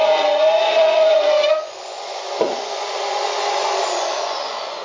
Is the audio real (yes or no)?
no